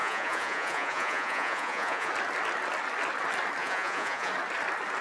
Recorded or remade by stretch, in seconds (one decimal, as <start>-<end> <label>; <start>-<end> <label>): 0.0-2.1 remade; 2.1-3.6 recorded; 3.6-4.3 remade; 4.3-5.0 recorded